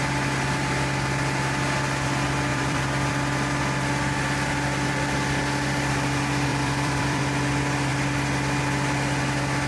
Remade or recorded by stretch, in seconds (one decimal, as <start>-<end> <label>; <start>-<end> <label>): 0.0-2.5 recorded; 2.5-3.1 remade; 3.1-6.5 recorded; 6.5-7.2 remade; 7.2-9.7 recorded